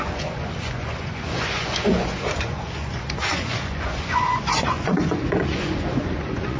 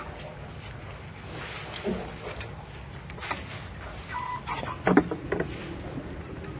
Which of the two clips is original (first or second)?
second